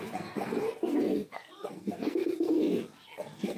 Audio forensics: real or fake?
fake